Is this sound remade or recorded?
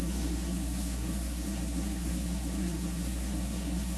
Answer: remade